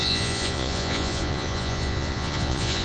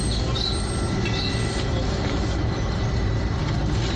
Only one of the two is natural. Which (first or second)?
second